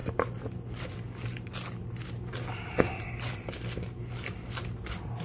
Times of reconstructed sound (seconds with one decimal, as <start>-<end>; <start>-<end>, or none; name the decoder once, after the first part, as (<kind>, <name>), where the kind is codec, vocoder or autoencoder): none